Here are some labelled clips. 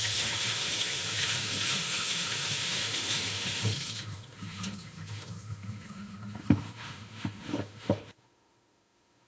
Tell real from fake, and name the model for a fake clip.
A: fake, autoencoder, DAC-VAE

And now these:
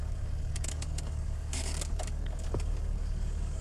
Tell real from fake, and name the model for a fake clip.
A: fake, codec, DAC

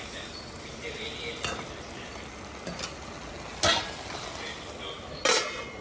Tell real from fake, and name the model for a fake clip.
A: real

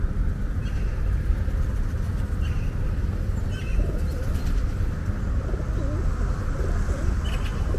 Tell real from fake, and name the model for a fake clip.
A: real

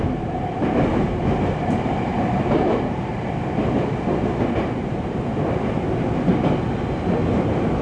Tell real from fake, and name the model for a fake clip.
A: fake, vocoder, BigVGAN v2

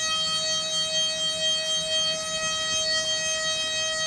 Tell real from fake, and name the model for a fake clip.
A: real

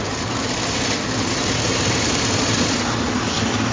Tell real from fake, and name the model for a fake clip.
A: real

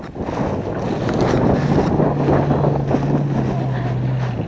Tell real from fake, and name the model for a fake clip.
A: real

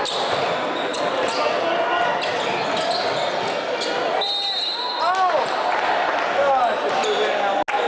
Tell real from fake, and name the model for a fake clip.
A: real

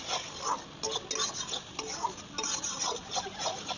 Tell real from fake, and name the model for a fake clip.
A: real